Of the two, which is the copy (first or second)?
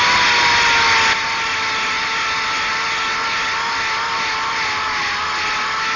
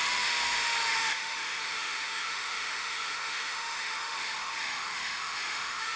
second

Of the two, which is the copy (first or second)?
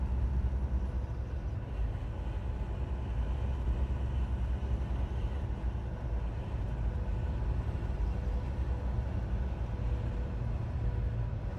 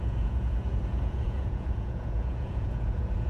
second